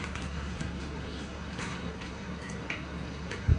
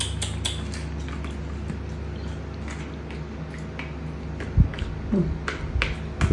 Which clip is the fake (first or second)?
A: first